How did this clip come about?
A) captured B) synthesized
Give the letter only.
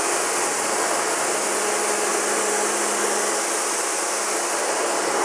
A